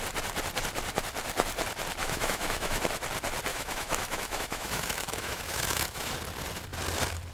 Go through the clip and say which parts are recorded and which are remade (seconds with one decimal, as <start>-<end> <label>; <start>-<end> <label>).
0.0-2.0 recorded; 2.0-2.8 remade; 2.8-3.5 recorded; 3.5-6.1 remade; 6.1-7.3 recorded